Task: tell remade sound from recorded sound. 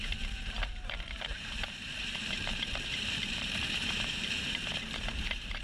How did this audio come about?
remade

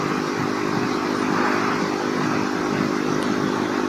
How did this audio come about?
recorded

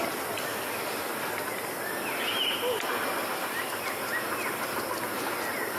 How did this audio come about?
recorded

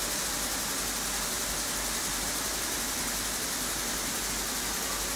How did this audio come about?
recorded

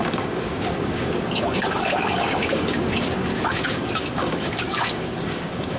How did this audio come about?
remade